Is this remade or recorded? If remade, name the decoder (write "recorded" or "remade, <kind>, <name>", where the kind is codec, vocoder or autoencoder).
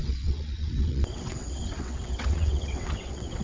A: remade, vocoder, WaveNeXt